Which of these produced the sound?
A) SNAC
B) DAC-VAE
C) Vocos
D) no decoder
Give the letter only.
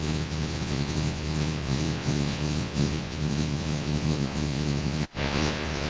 C